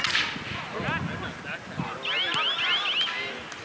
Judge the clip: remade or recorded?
recorded